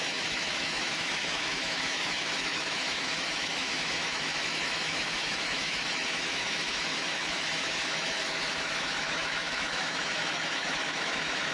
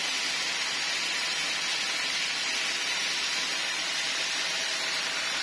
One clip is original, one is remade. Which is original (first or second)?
second